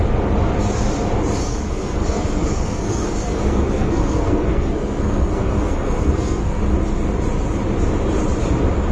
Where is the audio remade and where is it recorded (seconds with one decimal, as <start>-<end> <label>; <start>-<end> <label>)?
0.0-1.5 recorded; 1.5-6.6 remade; 6.6-8.9 recorded